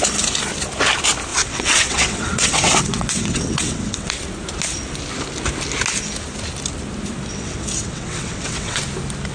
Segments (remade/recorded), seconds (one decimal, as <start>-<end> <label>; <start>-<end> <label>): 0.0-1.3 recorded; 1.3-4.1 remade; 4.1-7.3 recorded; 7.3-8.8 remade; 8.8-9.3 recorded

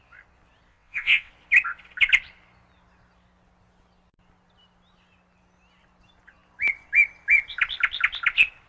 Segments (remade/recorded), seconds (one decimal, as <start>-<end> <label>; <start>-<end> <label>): 0.0-0.7 recorded; 0.7-1.3 remade; 1.3-8.7 recorded

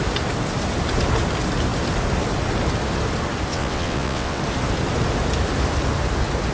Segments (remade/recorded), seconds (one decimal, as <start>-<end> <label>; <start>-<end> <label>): 0.0-3.5 recorded; 3.5-4.4 remade; 4.4-6.5 recorded

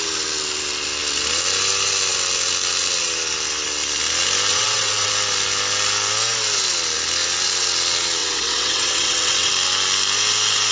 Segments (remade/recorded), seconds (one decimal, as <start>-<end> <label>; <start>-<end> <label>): 0.0-4.5 recorded; 4.5-5.1 remade; 5.1-8.2 recorded; 8.2-9.5 remade; 9.5-10.7 recorded

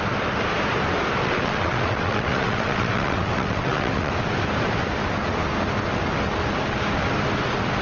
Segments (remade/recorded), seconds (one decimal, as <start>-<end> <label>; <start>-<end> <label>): 0.0-1.2 recorded; 1.2-4.1 remade; 4.1-7.8 recorded